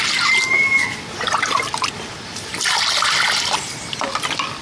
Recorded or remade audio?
recorded